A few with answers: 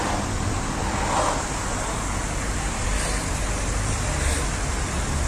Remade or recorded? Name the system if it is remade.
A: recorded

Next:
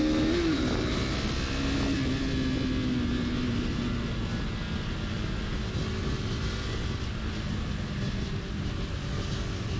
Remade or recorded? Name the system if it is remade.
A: recorded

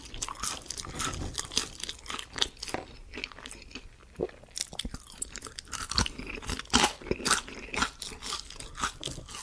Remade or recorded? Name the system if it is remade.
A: recorded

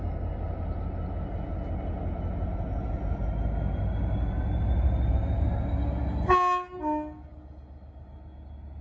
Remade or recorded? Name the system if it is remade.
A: recorded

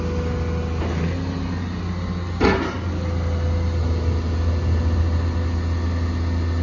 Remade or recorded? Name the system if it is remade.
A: recorded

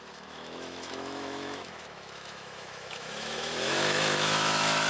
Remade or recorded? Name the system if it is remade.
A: remade, autoencoder, DAC-VAE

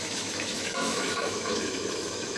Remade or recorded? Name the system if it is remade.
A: remade, autoencoder, DAC-VAE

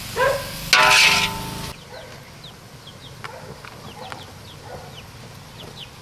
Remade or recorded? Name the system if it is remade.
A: recorded